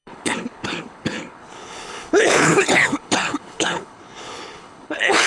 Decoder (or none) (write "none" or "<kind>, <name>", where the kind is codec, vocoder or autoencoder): codec, HILCodec